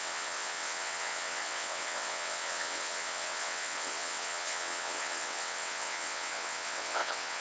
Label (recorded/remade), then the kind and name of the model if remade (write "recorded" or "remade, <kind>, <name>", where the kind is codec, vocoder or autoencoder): remade, vocoder, WaveNeXt